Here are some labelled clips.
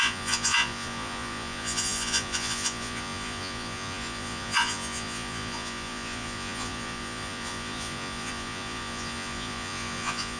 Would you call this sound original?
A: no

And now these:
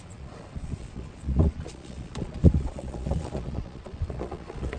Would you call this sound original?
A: no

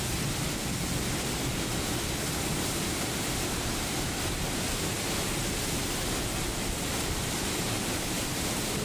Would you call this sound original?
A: yes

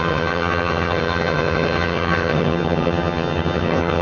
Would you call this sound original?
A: no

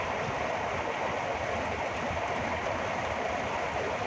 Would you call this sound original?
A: yes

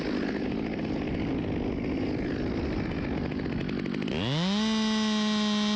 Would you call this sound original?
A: yes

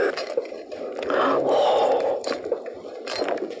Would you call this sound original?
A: yes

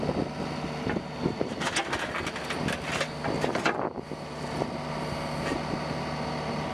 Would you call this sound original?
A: yes